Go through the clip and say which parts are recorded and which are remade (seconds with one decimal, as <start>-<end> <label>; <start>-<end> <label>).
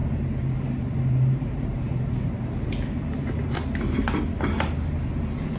0.0-2.7 remade; 2.7-5.6 recorded